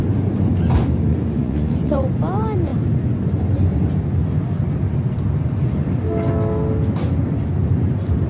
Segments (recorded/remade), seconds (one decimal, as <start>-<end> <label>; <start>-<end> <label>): 0.0-1.1 recorded; 1.1-2.1 remade; 2.1-8.3 recorded